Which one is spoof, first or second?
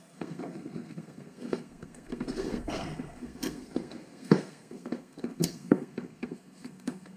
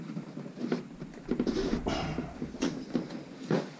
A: first